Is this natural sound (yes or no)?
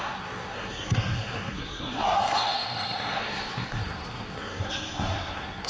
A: no